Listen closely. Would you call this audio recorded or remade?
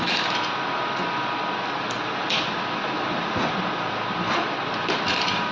recorded